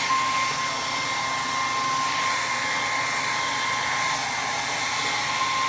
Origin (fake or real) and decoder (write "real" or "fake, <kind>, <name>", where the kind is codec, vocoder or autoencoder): real